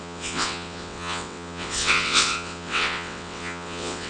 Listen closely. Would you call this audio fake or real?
fake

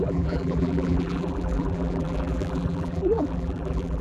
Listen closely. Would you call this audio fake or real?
fake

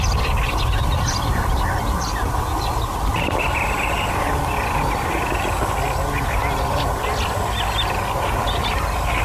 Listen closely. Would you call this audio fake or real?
real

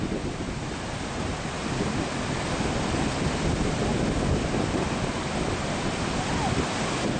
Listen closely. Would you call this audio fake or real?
real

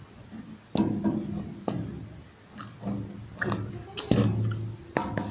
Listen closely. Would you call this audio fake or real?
real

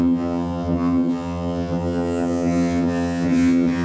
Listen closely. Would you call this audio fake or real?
fake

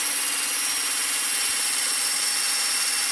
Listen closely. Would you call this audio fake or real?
fake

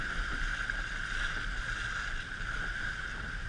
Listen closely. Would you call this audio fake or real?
real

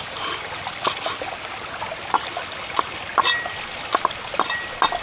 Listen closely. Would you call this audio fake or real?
real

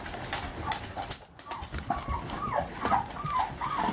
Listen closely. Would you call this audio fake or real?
real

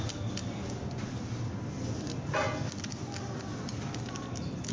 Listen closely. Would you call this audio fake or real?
real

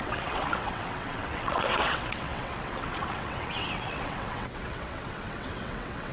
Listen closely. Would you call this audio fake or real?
fake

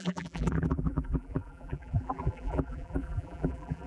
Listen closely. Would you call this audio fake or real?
fake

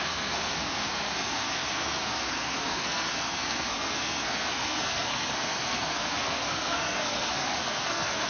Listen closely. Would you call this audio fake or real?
fake